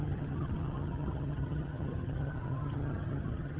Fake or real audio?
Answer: fake